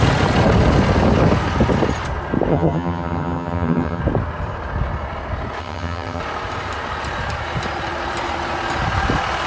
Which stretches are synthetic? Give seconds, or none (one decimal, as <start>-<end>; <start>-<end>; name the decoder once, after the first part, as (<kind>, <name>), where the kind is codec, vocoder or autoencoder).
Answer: 2.5-4.0 (vocoder, HiFi-GAN); 5.6-6.2